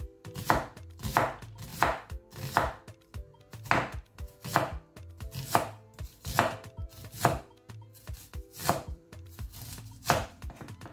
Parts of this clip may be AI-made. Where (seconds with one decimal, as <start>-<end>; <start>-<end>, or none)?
6.8-7.7; 8.6-10.3